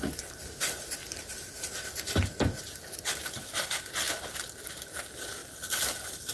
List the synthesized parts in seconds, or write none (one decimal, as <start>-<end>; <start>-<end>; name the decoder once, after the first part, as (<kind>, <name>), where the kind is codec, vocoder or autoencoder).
none